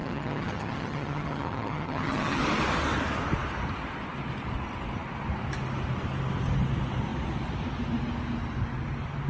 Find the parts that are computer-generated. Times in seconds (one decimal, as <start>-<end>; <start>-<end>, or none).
0.0-2.4